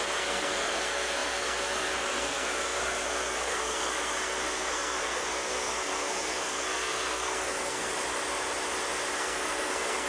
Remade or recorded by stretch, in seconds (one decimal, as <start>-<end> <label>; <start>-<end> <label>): 0.0-7.9 remade; 7.9-9.1 recorded; 9.1-10.1 remade